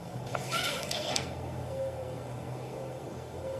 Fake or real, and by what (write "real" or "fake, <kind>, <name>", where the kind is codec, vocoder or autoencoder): fake, codec, SNAC